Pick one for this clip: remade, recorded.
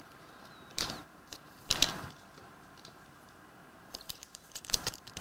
remade